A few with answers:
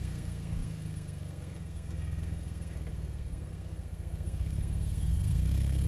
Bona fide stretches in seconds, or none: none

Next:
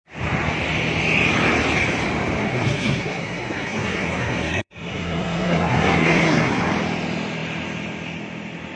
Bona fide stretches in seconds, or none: 0.0-2.4; 6.6-8.8

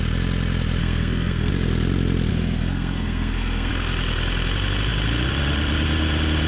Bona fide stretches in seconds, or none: 0.0-0.8; 1.5-2.3; 3.7-6.5